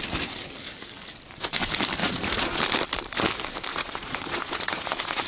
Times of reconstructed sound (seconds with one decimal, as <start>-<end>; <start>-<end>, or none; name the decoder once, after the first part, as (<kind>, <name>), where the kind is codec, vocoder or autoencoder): 2.0-2.6 (vocoder, Vocos); 3.7-5.3